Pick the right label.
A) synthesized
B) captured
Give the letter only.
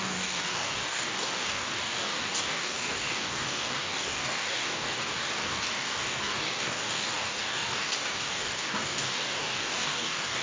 A